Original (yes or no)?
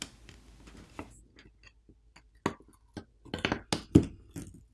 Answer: yes